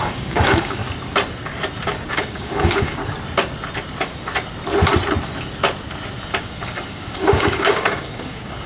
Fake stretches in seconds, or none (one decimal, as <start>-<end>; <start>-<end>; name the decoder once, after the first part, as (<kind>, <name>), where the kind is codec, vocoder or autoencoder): 0.0-0.8 (codec, DAC); 2.1-3.0; 6.4-8.7